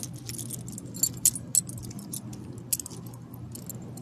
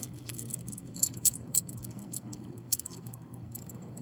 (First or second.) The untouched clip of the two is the first